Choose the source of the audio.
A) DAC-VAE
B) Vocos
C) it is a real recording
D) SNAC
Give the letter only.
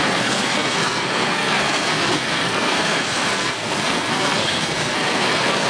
D